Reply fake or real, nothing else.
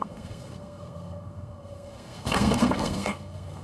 fake